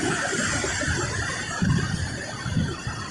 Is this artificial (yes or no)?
no